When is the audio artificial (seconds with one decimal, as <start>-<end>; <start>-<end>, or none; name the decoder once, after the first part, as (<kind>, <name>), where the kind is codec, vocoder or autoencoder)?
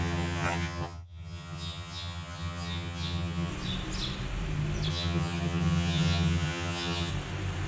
0.0-3.5 (vocoder, HiFi-GAN); 4.9-7.1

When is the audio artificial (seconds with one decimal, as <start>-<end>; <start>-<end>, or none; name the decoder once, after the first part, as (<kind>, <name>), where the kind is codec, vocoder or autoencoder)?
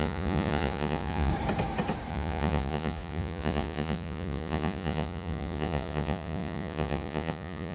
0.0-1.3 (vocoder, Vocos); 2.1-7.7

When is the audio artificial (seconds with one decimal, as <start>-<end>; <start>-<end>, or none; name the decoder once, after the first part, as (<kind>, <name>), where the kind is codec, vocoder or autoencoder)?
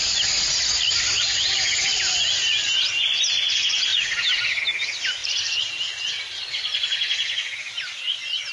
3.9-4.6 (vocoder, BigVGAN v2); 5.2-5.7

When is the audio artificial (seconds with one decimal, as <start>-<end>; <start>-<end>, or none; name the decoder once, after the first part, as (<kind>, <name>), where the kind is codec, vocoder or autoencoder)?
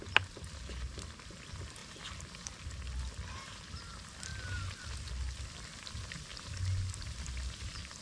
none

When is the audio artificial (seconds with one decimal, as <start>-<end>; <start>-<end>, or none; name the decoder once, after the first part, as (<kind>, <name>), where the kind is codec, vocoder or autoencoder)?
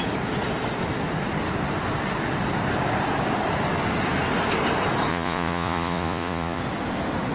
5.1-6.6 (vocoder, Vocos)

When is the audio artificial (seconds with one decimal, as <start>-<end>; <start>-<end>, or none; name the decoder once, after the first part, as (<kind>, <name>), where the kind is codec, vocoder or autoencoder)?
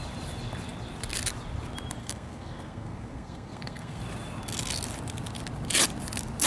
2.0-4.0 (codec, SNAC)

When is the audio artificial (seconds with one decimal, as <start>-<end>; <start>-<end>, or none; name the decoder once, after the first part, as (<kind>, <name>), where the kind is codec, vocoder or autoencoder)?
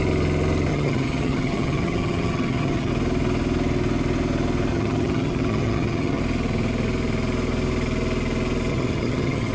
0.7-2.9 (vocoder, HiFi-GAN); 4.7-6.2; 8.7-9.5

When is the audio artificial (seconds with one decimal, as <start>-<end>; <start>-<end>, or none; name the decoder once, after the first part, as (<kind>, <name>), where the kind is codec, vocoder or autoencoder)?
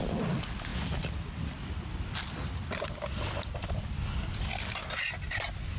none